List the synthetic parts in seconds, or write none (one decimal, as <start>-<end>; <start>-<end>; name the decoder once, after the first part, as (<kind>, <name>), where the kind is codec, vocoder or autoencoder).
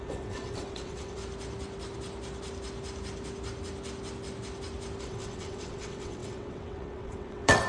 0.0-1.2 (vocoder, WaveNeXt); 5.0-7.7